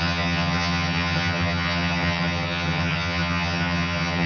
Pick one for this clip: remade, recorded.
remade